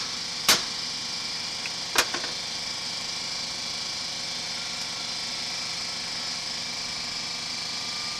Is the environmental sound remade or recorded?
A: recorded